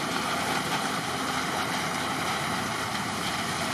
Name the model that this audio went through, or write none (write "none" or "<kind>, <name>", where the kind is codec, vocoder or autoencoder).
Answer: vocoder, BigVGAN v2